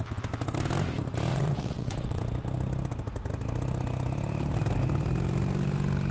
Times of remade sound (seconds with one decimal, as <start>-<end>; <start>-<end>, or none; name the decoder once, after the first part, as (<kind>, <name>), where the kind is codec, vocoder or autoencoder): 1.3-2.2 (vocoder, WaveNeXt)